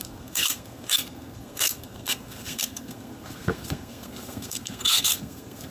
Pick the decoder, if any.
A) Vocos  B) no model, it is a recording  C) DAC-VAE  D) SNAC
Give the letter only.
D